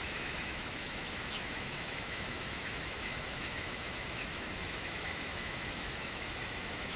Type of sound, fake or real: fake